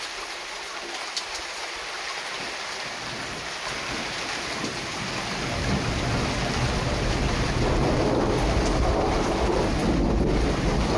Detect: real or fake real